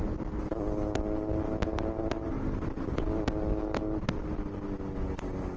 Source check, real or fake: real